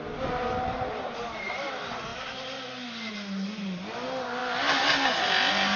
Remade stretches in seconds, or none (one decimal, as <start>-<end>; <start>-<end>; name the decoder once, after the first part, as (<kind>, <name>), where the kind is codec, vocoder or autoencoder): none